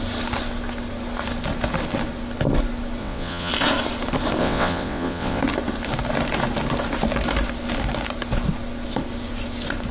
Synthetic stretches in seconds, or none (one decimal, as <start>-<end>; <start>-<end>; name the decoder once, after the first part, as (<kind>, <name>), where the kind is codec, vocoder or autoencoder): 3.0-3.5 (vocoder, WaveNeXt); 4.4-5.4